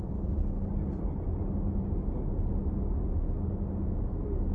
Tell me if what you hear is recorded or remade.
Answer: recorded